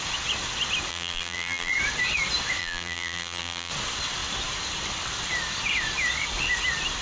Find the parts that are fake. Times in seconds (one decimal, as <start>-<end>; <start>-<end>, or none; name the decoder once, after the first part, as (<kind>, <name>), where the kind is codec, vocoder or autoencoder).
0.9-1.7 (vocoder, BigVGAN v2); 2.6-3.7